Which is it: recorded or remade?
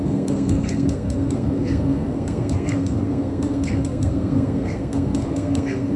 remade